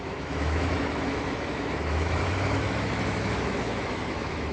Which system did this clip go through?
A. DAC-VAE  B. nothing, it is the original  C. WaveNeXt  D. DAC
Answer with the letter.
A